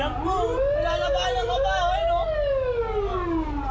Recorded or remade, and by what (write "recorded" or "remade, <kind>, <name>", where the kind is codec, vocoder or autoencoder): recorded